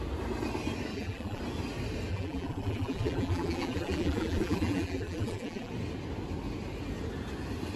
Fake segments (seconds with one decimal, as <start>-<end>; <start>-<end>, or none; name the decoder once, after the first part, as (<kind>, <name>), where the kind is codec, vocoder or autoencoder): 0.9-1.4 (vocoder, BigVGAN v2); 2.1-5.7